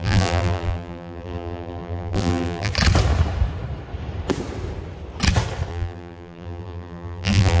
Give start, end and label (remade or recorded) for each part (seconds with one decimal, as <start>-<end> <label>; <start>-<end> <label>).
0.0-2.7 remade; 2.7-5.7 recorded; 5.7-7.6 remade